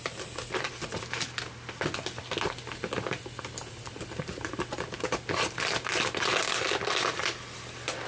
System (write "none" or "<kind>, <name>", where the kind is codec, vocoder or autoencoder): none